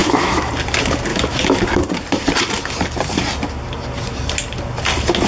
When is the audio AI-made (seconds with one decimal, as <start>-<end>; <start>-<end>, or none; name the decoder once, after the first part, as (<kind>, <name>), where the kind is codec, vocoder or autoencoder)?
0.0-0.5 (autoencoder, DAC-VAE); 1.1-1.6